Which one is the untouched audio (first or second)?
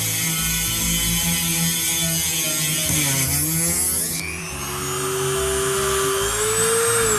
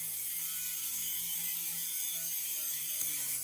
first